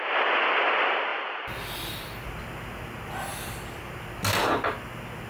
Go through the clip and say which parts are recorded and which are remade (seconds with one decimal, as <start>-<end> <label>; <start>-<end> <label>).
0.0-1.1 recorded; 1.1-2.3 remade; 2.3-3.3 recorded; 3.3-3.9 remade; 3.9-5.3 recorded